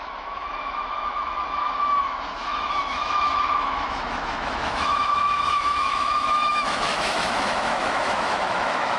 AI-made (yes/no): yes